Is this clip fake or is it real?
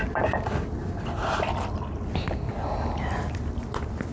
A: real